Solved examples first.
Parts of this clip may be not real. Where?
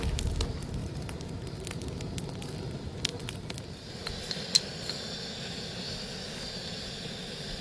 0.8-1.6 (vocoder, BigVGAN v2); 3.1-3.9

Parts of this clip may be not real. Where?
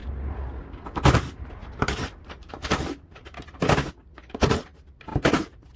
1.6-3.9 (vocoder, BigVGAN v2); 5.1-5.8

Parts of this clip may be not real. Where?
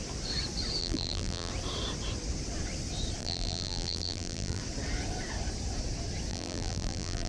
0.8-1.5 (vocoder, BigVGAN v2); 3.2-4.6; 6.3-7.3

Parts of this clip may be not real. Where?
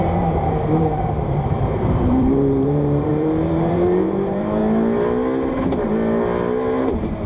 0.0-4.6 (vocoder, BigVGAN v2); 6.8-7.3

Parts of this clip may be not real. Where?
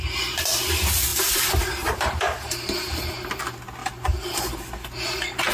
1.1-3.1 (vocoder, BigVGAN v2); 3.8-4.5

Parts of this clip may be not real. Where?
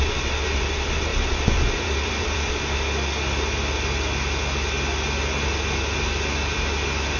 1.1-2.5 (vocoder, BigVGAN v2)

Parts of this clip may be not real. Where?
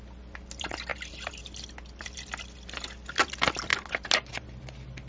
none